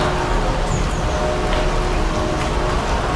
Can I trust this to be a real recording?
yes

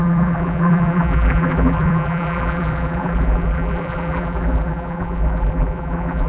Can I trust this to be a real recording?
no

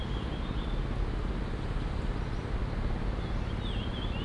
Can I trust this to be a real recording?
yes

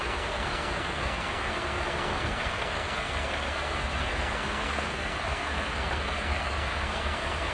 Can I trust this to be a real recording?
no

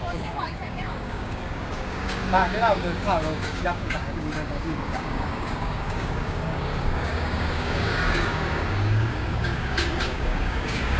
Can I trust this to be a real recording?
no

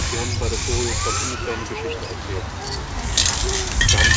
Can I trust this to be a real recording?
yes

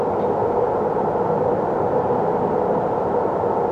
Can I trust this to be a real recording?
yes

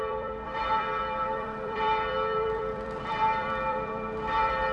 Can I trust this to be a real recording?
no